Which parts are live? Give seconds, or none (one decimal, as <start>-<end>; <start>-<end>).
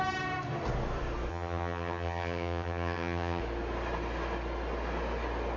0.0-1.3; 3.4-5.6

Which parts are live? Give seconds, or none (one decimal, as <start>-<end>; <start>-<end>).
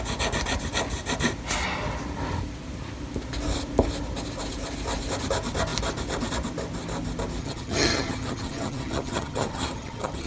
0.0-7.4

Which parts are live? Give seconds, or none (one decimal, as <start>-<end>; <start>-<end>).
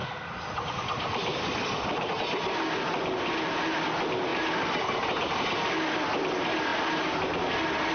0.0-7.9